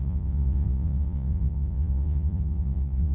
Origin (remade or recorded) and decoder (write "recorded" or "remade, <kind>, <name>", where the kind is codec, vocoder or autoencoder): remade, vocoder, Vocos